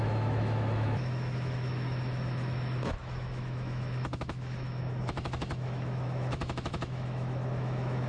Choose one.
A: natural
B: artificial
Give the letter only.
B